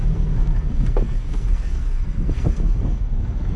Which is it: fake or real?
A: fake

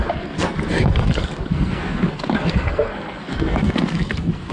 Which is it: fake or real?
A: fake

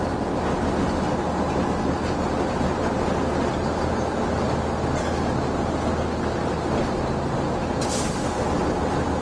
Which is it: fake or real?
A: real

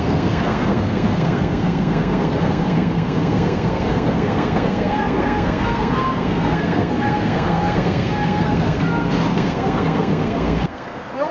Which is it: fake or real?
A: fake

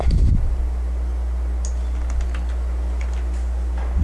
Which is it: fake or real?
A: real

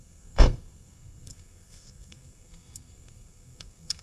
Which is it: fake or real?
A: fake